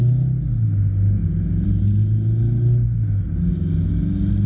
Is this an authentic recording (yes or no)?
yes